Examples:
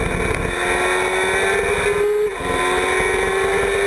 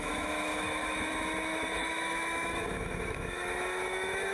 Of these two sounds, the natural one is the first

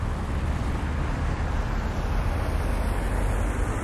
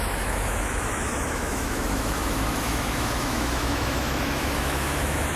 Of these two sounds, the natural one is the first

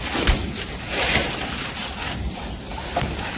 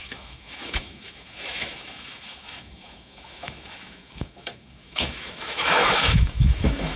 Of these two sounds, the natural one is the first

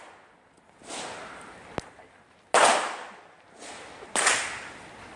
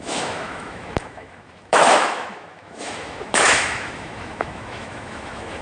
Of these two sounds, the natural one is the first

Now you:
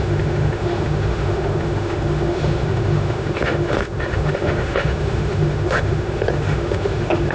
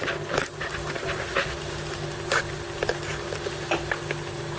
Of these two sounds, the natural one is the second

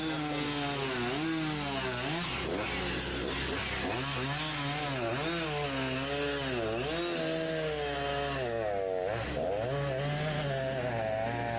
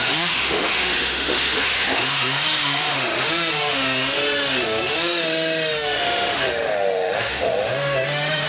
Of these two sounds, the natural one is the first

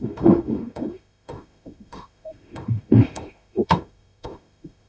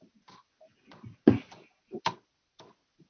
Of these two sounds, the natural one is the second